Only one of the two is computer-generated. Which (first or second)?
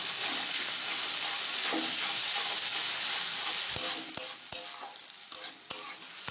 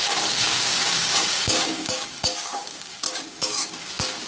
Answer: second